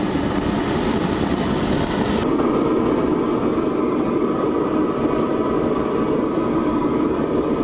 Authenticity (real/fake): real